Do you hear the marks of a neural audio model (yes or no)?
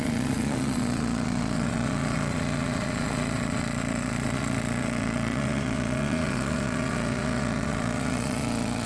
yes